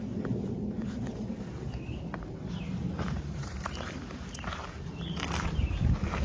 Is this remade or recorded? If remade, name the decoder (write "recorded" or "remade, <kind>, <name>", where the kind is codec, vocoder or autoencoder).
remade, vocoder, BigVGAN v2